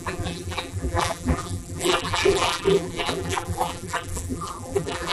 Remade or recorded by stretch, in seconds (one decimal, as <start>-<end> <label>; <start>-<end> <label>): 0.0-5.1 remade

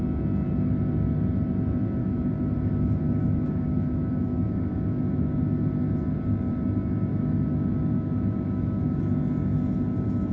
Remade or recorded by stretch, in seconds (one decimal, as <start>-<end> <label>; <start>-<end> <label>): 0.0-2.0 recorded; 2.0-5.4 remade; 5.4-7.1 recorded; 7.1-9.0 remade; 9.0-10.3 recorded

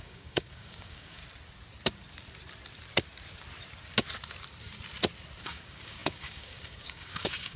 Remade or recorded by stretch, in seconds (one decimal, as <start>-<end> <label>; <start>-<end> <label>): 0.0-1.2 remade; 1.2-5.4 recorded; 5.4-7.6 remade

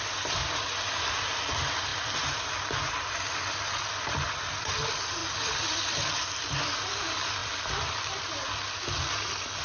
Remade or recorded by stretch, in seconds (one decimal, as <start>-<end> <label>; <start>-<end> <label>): 0.0-0.4 remade; 0.4-1.4 recorded; 1.4-9.6 remade

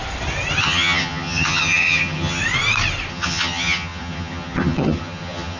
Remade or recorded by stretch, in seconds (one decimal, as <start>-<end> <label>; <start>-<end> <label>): 0.0-0.6 recorded; 0.6-2.4 remade; 2.4-3.1 recorded; 3.1-5.6 remade

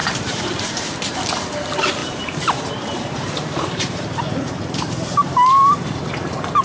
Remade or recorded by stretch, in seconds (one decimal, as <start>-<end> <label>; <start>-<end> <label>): 0.0-0.8 remade; 0.8-2.0 recorded; 2.0-6.0 remade; 6.0-6.6 recorded

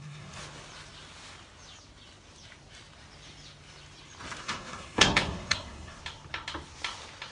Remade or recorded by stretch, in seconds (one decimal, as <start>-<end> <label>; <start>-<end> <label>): 0.0-0.4 remade; 0.4-4.4 recorded; 4.4-6.0 remade; 6.0-7.3 recorded